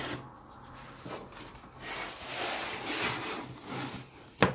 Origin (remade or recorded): recorded